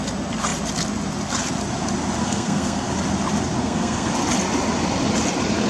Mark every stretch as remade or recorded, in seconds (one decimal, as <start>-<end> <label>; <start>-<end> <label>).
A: 0.0-2.2 recorded; 2.2-2.9 remade; 2.9-3.6 recorded; 3.6-4.1 remade; 4.1-5.7 recorded